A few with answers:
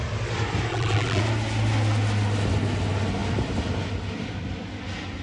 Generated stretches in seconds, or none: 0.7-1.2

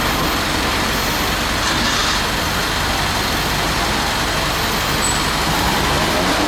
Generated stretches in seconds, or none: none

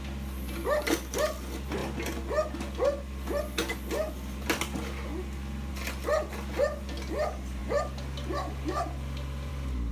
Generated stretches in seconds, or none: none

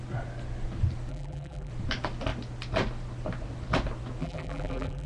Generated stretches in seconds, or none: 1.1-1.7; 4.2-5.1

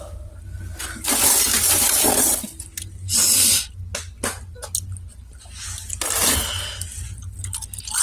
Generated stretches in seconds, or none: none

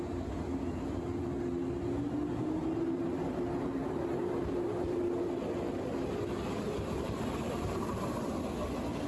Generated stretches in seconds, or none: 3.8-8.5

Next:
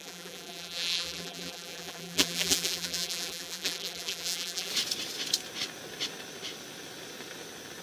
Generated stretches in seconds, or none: 0.0-4.7

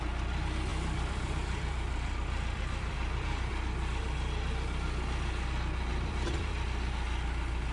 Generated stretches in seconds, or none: 0.7-3.5; 5.9-6.5